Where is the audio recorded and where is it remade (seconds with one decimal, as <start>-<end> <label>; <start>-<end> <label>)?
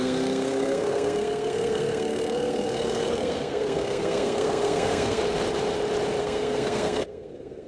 0.0-5.2 remade; 5.2-6.2 recorded; 6.2-7.7 remade